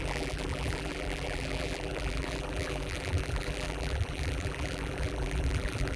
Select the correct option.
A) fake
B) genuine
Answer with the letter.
A